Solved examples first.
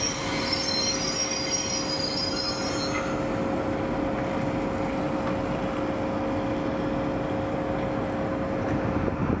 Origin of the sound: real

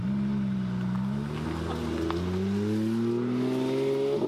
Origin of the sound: real